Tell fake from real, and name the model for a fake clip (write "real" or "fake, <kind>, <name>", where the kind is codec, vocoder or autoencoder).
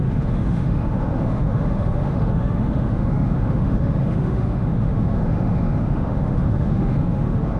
fake, autoencoder, DAC-VAE